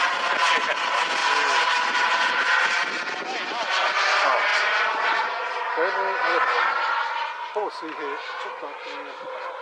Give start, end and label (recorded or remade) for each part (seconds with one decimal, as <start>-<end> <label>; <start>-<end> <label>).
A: 0.0-9.6 recorded